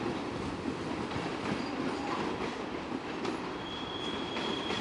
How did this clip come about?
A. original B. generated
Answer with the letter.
B